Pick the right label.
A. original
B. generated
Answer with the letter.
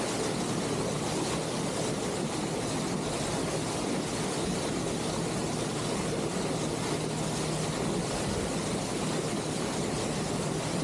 A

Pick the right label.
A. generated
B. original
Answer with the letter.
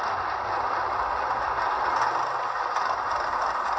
B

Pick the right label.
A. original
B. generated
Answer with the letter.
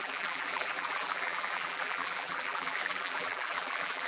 B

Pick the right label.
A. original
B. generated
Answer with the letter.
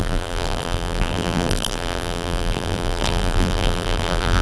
B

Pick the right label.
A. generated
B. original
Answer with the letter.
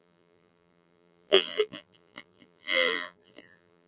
A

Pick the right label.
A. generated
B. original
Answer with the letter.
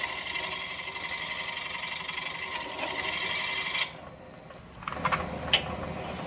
B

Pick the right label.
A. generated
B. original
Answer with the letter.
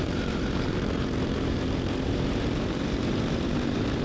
A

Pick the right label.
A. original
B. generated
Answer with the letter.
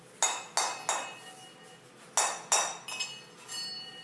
A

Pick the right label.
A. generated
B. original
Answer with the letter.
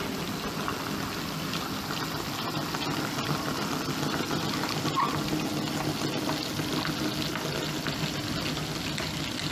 B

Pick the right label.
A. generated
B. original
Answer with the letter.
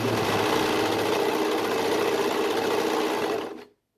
B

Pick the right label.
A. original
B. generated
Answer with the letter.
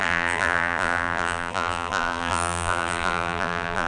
B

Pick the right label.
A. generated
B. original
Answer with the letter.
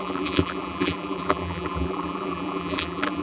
A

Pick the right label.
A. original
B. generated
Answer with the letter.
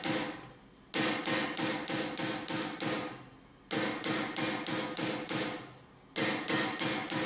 A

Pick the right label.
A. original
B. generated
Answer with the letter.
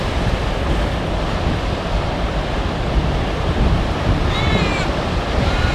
B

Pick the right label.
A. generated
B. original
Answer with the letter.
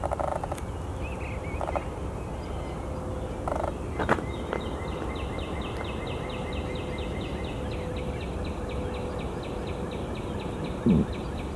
B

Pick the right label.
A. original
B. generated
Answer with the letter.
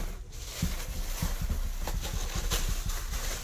A